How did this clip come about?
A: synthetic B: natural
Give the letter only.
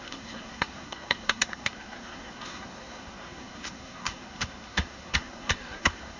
A